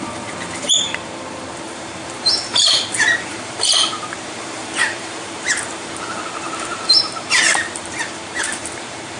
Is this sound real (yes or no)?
no